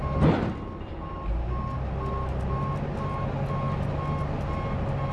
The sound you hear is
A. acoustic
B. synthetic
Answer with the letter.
A